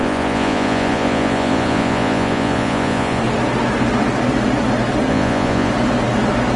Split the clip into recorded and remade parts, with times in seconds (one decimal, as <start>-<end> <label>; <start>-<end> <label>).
0.0-3.2 remade; 3.2-5.1 recorded; 5.1-5.7 remade; 5.7-6.6 recorded